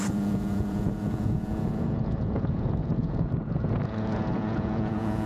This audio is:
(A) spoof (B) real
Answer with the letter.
A